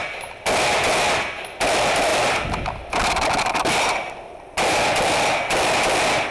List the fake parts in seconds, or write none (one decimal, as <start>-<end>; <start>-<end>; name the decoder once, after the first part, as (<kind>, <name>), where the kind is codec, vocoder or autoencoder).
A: none